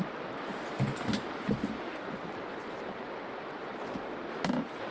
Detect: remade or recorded recorded